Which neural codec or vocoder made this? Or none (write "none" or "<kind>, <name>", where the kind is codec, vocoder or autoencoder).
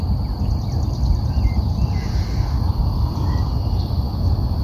none